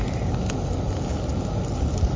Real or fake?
real